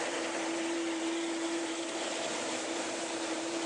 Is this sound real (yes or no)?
no